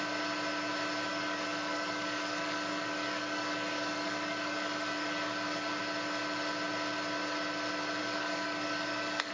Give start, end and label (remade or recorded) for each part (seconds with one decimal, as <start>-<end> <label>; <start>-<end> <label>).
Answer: 0.0-1.1 recorded; 1.1-5.8 remade; 5.8-8.0 recorded; 8.0-9.3 remade